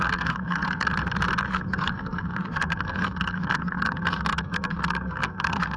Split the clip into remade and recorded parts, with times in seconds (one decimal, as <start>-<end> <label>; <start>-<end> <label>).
0.0-0.9 remade; 0.9-1.5 recorded; 1.5-5.8 remade

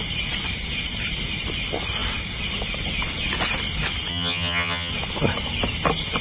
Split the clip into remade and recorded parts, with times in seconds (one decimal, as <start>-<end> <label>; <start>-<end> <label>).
0.0-4.1 recorded; 4.1-4.9 remade; 4.9-6.2 recorded

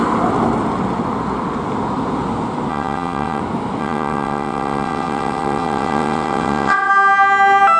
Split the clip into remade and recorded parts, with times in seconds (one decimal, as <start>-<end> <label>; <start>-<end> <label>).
0.0-2.7 recorded; 2.7-3.4 remade; 3.4-3.8 recorded; 3.8-6.9 remade; 6.9-7.8 recorded